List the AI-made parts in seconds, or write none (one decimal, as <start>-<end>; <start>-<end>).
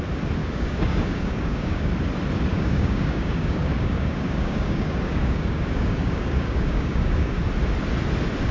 0.4-1.9; 2.5-7.4